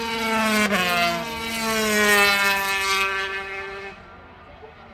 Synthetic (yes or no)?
no